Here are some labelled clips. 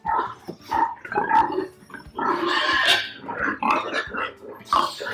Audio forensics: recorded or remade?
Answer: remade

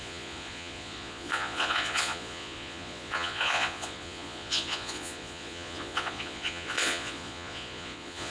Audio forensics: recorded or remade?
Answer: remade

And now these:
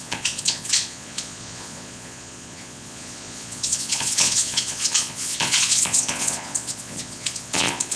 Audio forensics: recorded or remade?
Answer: remade